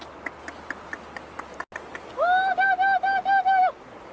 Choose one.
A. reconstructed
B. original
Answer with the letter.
B